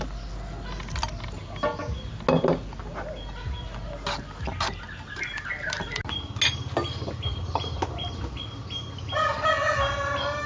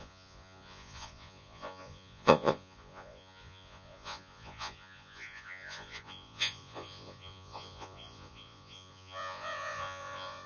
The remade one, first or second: second